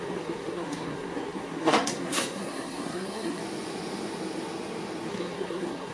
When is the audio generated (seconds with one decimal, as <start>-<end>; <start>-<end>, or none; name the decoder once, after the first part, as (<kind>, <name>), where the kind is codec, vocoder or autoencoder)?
0.0-3.4 (codec, SNAC); 5.1-5.9